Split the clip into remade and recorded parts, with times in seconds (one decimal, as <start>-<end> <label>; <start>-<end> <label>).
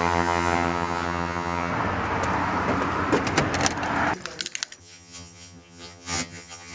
0.0-1.7 remade; 1.7-4.8 recorded; 4.8-6.7 remade